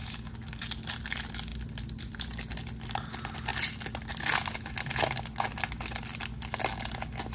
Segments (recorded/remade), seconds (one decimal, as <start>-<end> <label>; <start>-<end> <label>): 0.0-0.6 remade; 0.6-7.3 recorded